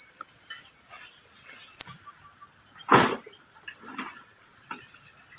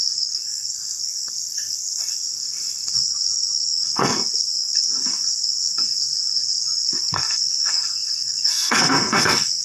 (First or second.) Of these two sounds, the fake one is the second